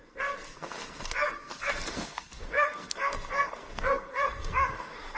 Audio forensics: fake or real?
fake